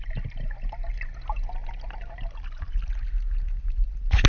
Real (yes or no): yes